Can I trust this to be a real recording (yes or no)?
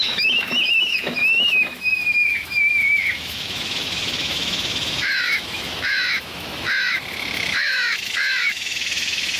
no